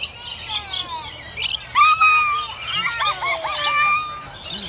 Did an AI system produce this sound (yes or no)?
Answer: no